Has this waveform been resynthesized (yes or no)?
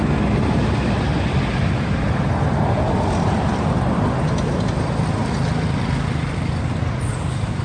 no